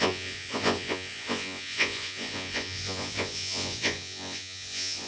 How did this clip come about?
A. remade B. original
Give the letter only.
A